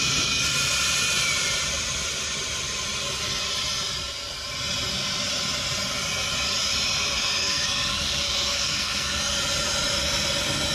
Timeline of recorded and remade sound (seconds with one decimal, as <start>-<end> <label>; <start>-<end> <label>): 0.0-7.4 recorded; 7.4-9.2 remade; 9.2-10.7 recorded